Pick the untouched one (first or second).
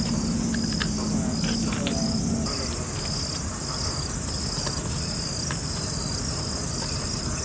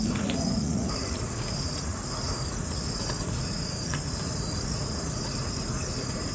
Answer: first